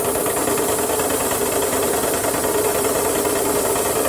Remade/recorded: recorded